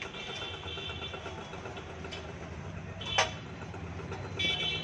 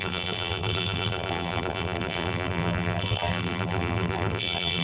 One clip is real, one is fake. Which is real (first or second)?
first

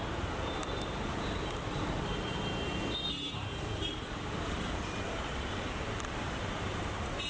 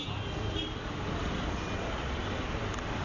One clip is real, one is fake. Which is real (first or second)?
second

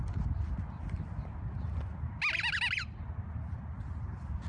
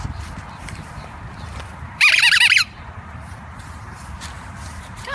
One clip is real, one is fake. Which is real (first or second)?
first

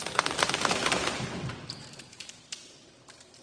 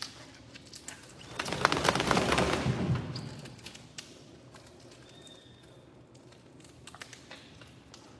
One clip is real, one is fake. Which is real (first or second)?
second